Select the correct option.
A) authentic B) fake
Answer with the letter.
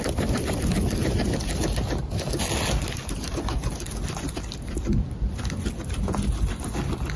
A